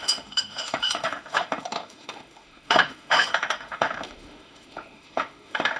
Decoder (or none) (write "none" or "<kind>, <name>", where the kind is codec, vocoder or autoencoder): autoencoder, DAC-VAE